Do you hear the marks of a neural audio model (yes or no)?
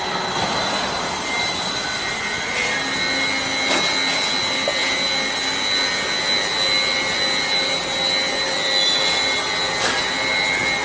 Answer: no